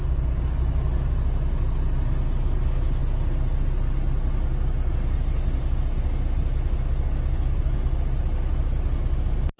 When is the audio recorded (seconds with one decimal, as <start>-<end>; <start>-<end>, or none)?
0.0-9.6